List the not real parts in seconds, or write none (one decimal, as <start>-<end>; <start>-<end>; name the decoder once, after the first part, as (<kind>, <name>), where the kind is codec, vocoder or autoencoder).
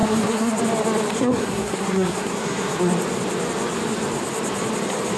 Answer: 0.0-0.6 (codec, SNAC); 1.1-2.8